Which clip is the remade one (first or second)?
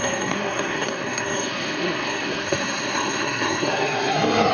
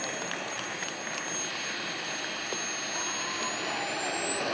first